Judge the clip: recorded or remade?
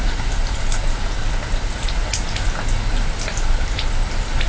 recorded